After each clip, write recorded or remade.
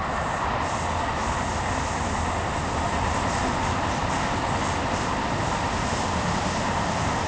recorded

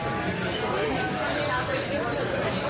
recorded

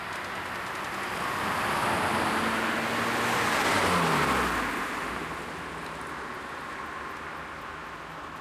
recorded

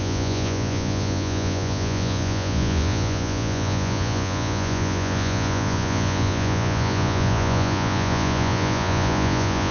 remade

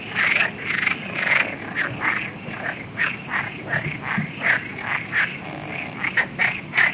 recorded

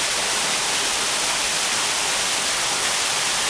recorded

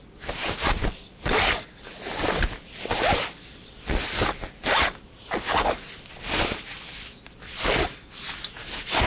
recorded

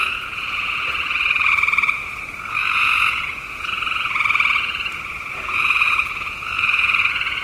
remade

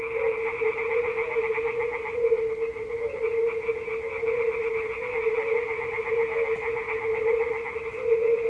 recorded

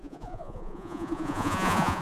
remade